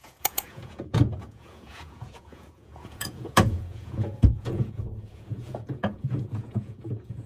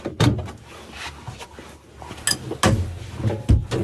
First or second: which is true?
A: second